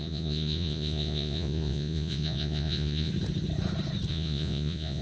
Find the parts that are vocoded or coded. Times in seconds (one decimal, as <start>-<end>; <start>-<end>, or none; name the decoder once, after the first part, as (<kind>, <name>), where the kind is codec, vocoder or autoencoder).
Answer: 0.0-3.1 (vocoder, Vocos); 4.1-5.0

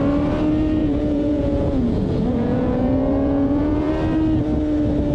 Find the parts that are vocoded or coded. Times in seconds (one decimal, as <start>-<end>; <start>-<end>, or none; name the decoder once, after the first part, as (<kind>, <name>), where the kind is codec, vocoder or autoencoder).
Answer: 0.8-3.9 (vocoder, Vocos)

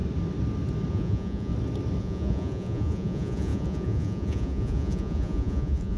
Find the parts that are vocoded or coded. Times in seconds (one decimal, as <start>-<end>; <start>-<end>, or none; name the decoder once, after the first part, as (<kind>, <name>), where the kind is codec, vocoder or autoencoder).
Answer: 0.9-1.5 (vocoder, Vocos); 2.0-6.0

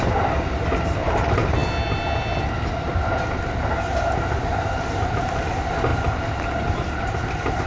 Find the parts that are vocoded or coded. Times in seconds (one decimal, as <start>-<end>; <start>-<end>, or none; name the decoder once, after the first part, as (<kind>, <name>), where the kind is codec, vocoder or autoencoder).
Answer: none

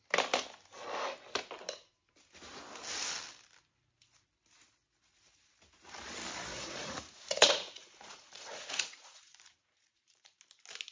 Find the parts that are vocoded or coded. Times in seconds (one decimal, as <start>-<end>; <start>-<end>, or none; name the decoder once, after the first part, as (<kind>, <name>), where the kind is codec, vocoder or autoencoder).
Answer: 6.5-10.4 (vocoder, Vocos)

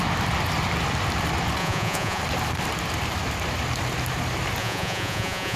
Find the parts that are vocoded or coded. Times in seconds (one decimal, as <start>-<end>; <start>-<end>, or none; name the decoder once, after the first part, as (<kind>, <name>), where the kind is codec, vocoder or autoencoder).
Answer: 1.6-2.2 (vocoder, Vocos); 4.6-5.6

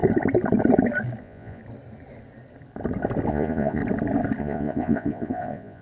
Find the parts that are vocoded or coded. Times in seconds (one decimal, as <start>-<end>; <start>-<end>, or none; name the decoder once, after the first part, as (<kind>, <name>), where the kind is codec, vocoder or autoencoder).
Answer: 1.2-1.6 (vocoder, Vocos); 3.3-3.8; 4.4-5.8